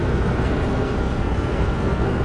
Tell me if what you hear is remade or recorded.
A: remade